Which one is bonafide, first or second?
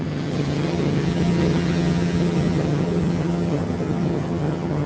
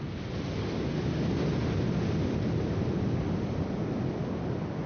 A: second